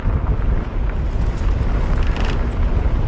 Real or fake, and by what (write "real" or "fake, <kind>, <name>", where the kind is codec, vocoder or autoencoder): real